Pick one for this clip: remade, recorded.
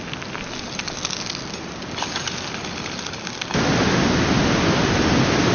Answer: recorded